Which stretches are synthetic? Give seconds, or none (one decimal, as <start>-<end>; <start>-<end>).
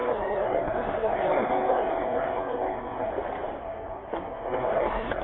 0.0-3.1; 3.6-5.2